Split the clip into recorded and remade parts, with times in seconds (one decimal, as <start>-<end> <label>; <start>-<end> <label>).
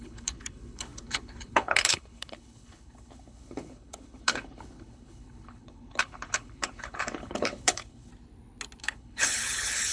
0.0-8.1 remade; 8.1-8.8 recorded; 8.8-9.9 remade